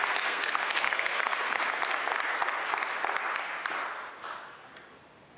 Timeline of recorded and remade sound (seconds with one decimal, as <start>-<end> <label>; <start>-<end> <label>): 0.0-1.6 remade; 1.6-5.4 recorded